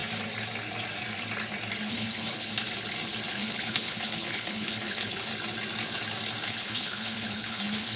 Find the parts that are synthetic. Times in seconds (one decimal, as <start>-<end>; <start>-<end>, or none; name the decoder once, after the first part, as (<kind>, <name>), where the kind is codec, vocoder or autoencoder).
1.9-2.5 (codec, HILCodec); 3.3-5.3; 6.5-8.0